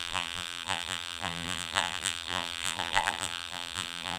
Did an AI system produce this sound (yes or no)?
yes